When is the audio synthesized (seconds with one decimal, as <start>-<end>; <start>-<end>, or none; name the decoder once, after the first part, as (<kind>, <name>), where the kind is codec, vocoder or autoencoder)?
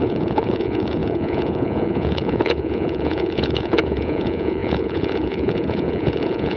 0.0-6.6 (vocoder, Vocos)